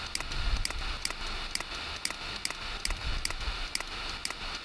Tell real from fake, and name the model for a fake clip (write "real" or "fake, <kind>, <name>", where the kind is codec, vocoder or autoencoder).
real